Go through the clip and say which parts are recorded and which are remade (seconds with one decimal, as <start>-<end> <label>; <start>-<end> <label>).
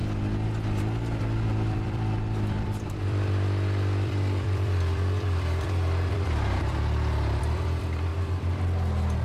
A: 0.0-1.2 recorded; 1.2-8.1 remade; 8.1-9.2 recorded